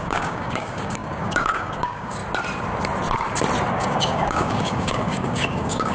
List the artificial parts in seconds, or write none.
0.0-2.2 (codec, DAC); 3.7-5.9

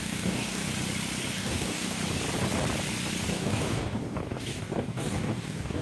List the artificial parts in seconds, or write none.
0.0-0.6 (codec, DAC); 1.3-2.0; 3.3-5.8

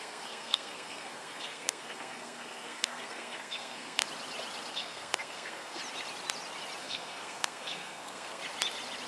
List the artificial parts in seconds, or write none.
0.0-4.0 (codec, SNAC); 4.7-5.8; 6.8-8.4

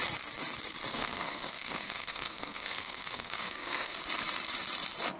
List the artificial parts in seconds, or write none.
0.9-4.0 (codec, SNAC)

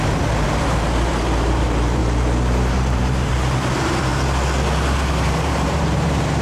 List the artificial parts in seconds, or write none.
0.0-2.0 (vocoder, BigVGAN v2); 2.7-4.1; 5.1-6.4

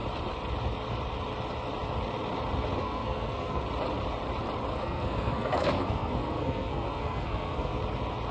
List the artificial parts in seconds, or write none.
2.8-3.6 (codec, SNAC); 4.7-7.8

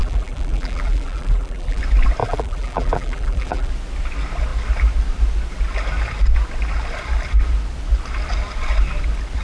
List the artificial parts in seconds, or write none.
0.0-1.8 (vocoder, BigVGAN v2); 2.2-3.7